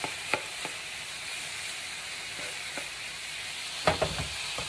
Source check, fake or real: real